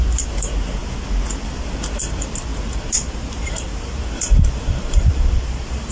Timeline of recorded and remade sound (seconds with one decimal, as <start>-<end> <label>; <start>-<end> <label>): 0.0-0.8 remade; 0.8-2.1 recorded; 2.1-5.9 remade